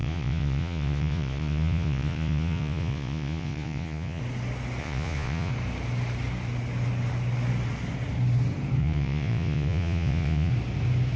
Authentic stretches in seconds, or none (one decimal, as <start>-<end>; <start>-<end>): 4.2-4.8; 5.5-8.8; 10.5-11.2